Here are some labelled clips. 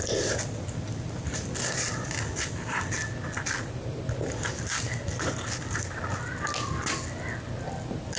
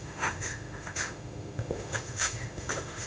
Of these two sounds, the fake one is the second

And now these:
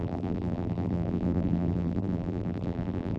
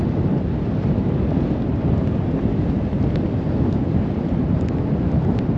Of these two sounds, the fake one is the first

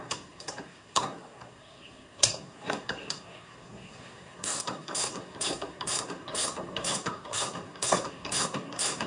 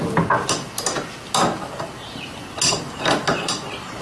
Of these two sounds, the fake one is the first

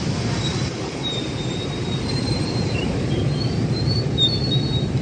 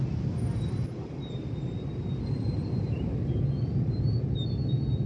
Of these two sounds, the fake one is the first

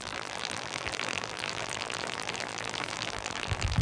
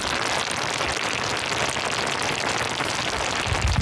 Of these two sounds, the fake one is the first